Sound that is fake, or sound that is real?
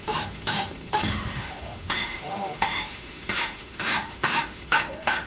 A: fake